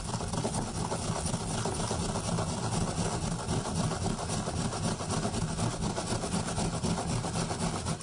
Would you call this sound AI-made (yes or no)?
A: no